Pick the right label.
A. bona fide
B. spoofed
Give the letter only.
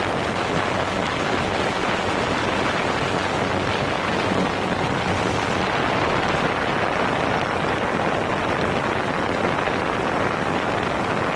A